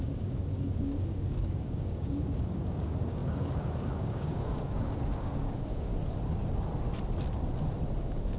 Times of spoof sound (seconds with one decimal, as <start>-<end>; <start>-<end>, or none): 0.0-5.9; 8.0-8.4